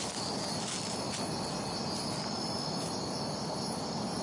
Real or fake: real